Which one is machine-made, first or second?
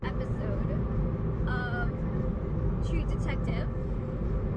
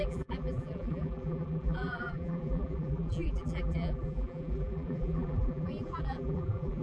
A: second